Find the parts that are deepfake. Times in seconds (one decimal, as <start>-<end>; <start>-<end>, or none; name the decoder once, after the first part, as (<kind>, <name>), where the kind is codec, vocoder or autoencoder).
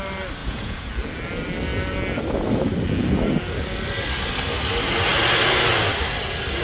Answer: 0.4-0.9 (vocoder, Vocos)